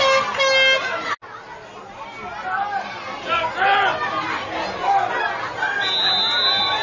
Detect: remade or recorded recorded